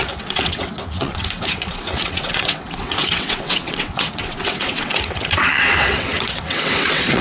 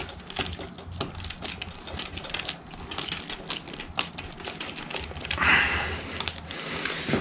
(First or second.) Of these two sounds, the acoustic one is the second